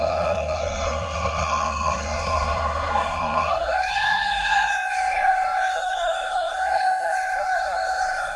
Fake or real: fake